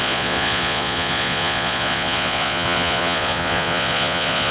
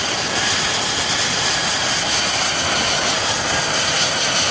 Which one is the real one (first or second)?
second